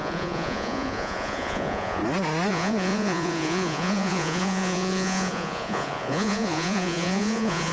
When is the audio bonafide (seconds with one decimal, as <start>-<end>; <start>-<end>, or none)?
2.0-2.5